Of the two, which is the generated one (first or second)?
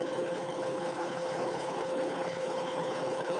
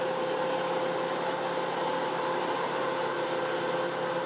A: first